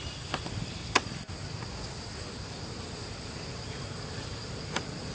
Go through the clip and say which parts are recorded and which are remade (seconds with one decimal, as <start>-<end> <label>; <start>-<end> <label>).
0.0-5.1 recorded